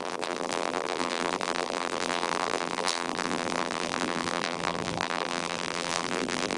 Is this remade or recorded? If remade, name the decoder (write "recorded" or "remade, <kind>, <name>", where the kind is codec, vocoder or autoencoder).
remade, vocoder, BigVGAN v2